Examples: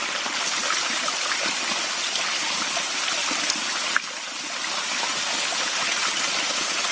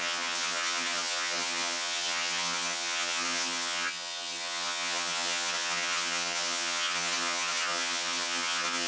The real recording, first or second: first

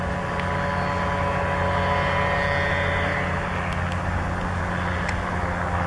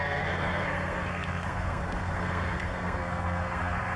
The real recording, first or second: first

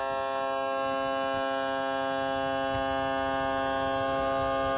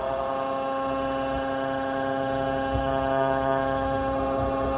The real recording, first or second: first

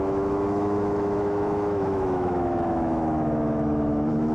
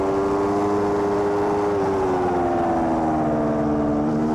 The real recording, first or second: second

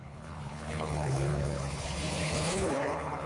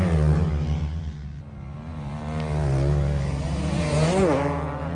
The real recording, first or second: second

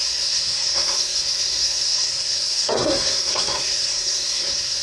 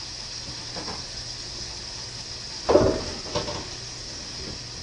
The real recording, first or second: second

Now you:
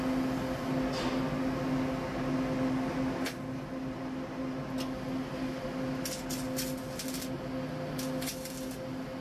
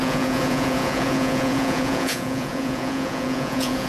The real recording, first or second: first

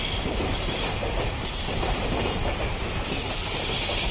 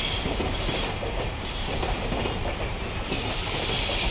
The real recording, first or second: second